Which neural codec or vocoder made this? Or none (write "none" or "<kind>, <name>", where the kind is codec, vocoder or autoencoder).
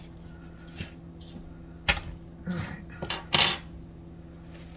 none